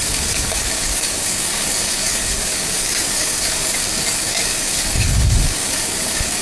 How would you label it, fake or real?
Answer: fake